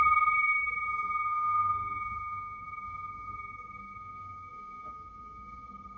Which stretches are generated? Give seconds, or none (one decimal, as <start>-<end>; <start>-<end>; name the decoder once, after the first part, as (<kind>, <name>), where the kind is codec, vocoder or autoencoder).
0.0-6.0 (codec, SNAC)